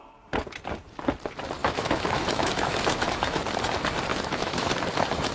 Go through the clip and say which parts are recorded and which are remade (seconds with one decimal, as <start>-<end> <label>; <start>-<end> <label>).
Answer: 0.0-1.6 recorded; 1.6-3.4 remade; 3.4-4.1 recorded; 4.1-4.7 remade; 4.7-5.3 recorded